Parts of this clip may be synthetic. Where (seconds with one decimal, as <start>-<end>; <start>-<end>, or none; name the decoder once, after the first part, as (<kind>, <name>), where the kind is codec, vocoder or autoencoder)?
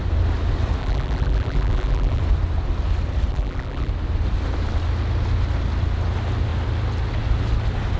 0.8-2.2 (vocoder, BigVGAN v2); 3.3-3.9